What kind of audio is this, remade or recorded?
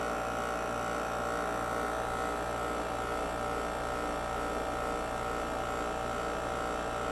recorded